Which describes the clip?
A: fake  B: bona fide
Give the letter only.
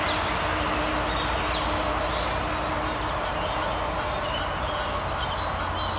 B